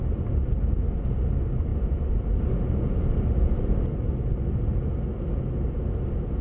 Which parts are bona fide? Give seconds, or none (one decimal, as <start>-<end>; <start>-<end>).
0.0-6.4

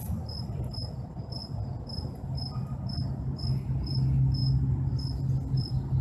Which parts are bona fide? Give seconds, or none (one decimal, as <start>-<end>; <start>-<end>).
1.4-3.1; 4.4-4.9

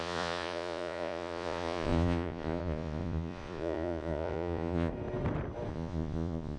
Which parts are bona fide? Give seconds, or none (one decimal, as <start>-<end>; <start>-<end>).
4.9-5.7

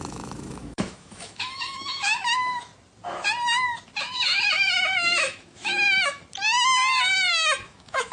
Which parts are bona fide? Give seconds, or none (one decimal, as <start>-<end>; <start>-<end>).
2.7-4.0; 6.2-7.3